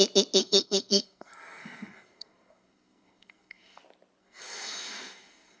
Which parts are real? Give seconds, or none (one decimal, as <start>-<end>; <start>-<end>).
0.0-0.4; 3.8-4.2